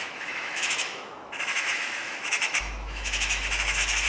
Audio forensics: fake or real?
fake